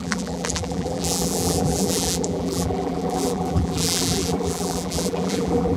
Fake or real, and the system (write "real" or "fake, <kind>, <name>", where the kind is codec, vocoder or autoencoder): fake, vocoder, BigVGAN v2